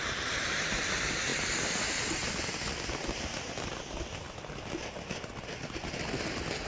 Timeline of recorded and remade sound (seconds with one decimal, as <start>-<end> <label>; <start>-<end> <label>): 0.0-6.7 recorded